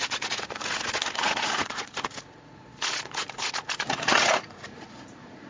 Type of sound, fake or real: fake